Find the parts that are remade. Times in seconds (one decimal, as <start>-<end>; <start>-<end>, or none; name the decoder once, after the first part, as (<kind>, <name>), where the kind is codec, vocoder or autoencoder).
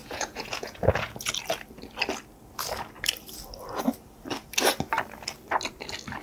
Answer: 0.0-1.3 (vocoder, Vocos)